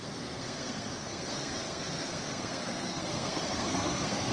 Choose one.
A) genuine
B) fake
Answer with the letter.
B